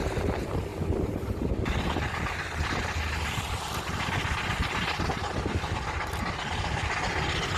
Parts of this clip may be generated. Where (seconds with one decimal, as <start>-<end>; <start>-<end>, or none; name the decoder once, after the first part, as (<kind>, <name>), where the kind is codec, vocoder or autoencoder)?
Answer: none